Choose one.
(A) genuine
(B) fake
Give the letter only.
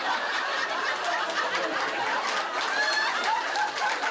A